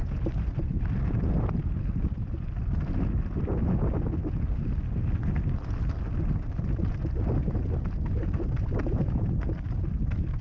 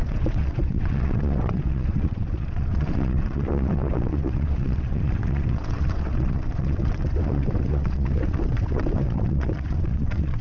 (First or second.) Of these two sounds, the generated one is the second